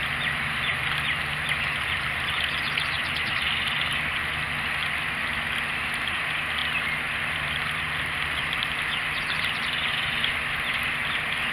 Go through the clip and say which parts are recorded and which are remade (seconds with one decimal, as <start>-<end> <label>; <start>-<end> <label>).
0.0-4.0 remade; 4.0-4.8 recorded; 4.8-5.5 remade; 5.5-6.6 recorded; 6.6-9.6 remade; 9.6-11.5 recorded